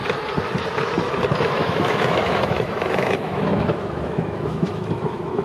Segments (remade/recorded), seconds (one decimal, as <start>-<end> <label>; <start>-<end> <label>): 0.0-1.4 recorded; 1.4-5.4 remade